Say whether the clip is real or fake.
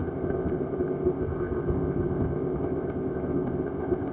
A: fake